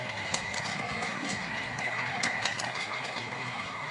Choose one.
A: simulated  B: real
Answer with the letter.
A